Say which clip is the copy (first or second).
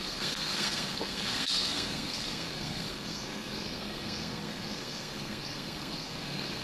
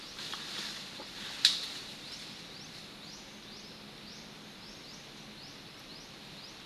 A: first